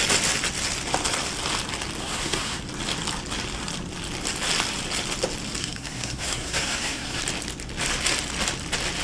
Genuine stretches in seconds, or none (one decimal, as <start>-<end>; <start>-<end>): 0.0-2.0; 2.6-5.6; 7.2-9.0